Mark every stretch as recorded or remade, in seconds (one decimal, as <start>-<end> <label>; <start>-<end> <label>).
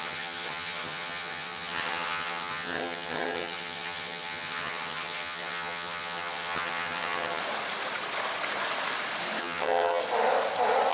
0.0-7.4 remade; 7.4-9.4 recorded; 9.4-10.0 remade; 10.0-10.9 recorded